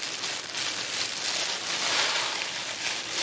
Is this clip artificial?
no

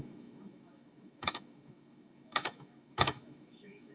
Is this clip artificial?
yes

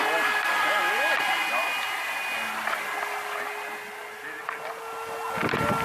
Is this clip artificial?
no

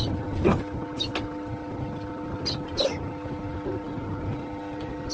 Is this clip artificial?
no